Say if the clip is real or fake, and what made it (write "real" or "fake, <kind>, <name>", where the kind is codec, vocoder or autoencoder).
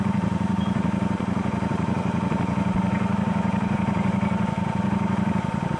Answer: fake, vocoder, BigVGAN v2